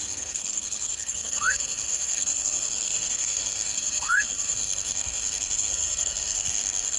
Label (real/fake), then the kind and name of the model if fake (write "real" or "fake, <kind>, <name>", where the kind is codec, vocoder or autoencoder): fake, codec, SNAC